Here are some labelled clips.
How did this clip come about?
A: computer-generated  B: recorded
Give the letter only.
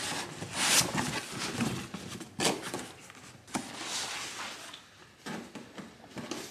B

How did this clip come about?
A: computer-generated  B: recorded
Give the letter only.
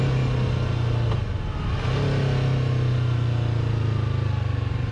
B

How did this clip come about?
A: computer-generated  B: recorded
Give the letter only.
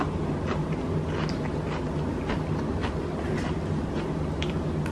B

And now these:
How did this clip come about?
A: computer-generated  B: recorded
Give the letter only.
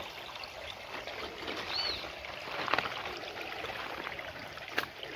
B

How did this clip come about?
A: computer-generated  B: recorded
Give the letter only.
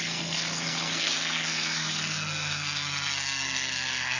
A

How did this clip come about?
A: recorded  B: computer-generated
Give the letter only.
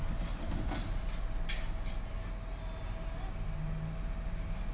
A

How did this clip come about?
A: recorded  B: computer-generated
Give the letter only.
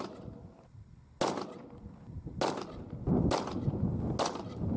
A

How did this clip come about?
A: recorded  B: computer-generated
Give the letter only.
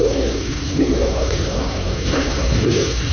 B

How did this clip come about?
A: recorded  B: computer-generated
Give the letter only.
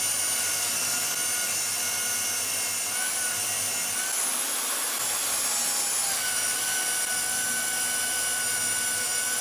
A